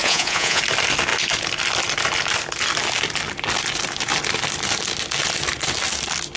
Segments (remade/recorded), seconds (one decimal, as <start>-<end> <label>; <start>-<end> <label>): 0.0-0.6 remade; 0.6-6.4 recorded